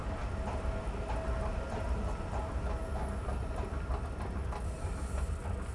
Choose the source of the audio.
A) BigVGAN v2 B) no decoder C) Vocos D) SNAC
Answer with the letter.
B